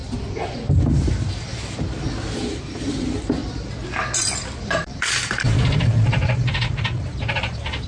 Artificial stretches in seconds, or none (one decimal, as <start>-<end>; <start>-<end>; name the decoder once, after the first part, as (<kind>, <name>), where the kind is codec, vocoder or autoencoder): 0.5-1.5 (vocoder, BigVGAN v2); 2.3-3.4; 4.6-7.9